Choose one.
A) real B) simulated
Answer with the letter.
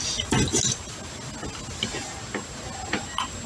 A